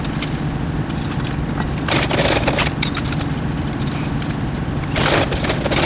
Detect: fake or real real